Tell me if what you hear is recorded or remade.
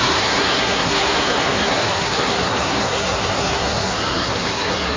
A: remade